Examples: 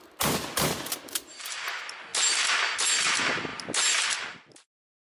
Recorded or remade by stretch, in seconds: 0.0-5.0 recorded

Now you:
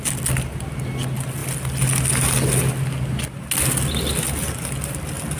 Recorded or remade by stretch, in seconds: 0.0-5.4 recorded

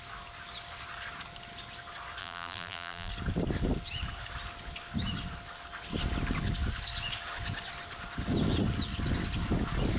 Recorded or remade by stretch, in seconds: 0.0-2.2 recorded; 2.2-3.1 remade; 3.1-10.0 recorded

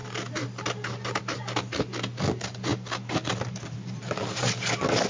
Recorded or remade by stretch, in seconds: 0.0-5.1 recorded

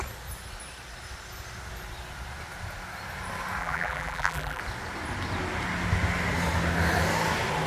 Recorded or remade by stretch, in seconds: 0.0-3.6 recorded; 3.6-4.6 remade; 4.6-7.7 recorded